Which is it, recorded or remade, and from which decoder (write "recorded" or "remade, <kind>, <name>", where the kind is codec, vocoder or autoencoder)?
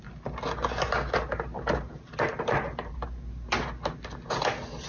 recorded